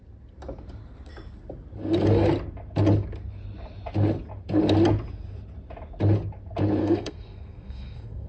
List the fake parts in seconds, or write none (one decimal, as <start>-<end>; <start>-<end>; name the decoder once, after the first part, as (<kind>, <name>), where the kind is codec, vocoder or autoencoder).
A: 6.8-8.3 (codec, SNAC)